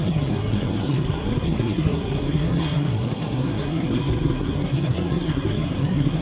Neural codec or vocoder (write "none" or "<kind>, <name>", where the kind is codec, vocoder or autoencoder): codec, SNAC